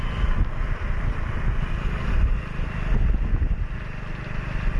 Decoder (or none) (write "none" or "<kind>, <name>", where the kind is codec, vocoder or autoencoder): none